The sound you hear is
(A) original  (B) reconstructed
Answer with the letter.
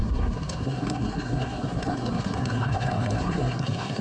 B